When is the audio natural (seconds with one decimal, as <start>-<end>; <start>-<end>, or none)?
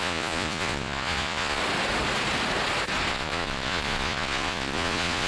1.6-3.1